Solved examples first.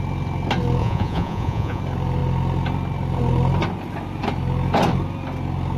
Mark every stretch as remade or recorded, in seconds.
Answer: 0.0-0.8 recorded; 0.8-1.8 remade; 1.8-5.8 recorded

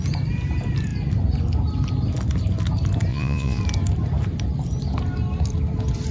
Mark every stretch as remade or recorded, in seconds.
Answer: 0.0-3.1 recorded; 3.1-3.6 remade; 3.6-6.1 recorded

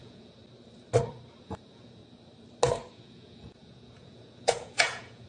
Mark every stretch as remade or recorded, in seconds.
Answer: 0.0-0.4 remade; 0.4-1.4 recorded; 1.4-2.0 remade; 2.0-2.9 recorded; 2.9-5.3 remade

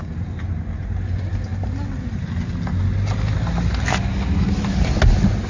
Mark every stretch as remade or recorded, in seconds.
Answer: 0.0-5.5 recorded